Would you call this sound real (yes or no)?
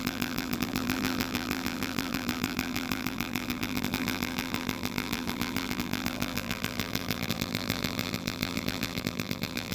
no